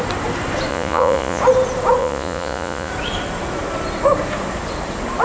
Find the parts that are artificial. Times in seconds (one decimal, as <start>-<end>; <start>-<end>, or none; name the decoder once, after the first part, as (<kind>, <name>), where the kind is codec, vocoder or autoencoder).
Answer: 0.7-1.4 (vocoder, Vocos); 2.0-2.9